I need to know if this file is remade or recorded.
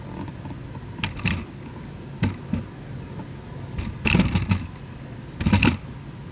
recorded